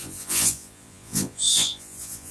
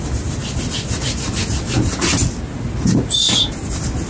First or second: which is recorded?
second